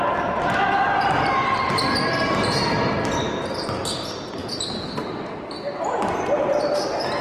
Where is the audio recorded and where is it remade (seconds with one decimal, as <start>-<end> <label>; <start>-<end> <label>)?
0.0-4.4 recorded; 4.4-5.6 remade; 5.6-7.2 recorded